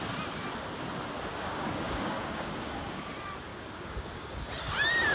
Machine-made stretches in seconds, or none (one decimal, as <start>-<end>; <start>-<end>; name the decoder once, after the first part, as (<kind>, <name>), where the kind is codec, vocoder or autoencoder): 1.3-3.1 (codec, DAC); 3.5-4.5